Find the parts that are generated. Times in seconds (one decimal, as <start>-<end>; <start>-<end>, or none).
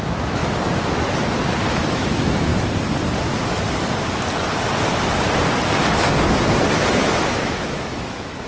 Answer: 0.0-0.4; 1.7-2.5; 6.9-8.5